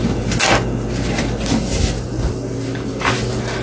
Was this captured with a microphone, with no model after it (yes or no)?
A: yes